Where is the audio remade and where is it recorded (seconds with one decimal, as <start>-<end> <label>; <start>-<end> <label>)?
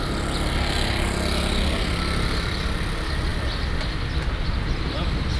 0.0-5.4 recorded